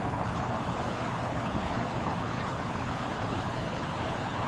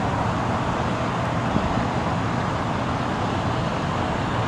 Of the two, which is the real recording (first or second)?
second